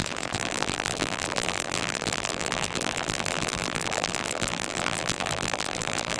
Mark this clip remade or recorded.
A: remade